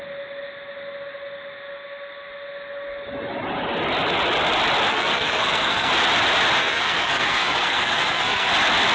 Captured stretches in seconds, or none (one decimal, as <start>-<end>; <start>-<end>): 0.0-4.9; 5.9-6.6; 8.5-8.9